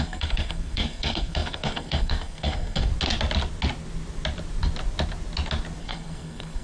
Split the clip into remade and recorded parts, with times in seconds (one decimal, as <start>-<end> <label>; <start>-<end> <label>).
0.0-2.9 remade; 2.9-5.8 recorded; 5.8-6.6 remade